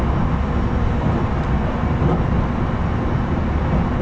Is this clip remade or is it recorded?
recorded